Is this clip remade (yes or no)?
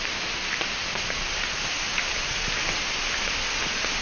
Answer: no